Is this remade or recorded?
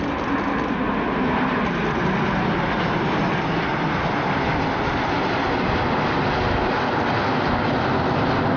recorded